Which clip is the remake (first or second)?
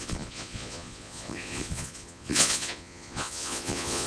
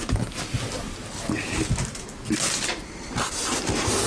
first